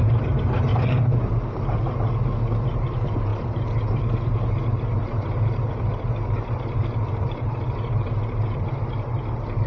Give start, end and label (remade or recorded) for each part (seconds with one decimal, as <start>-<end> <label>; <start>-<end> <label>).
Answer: 0.0-0.7 remade; 0.7-2.7 recorded; 2.7-9.7 remade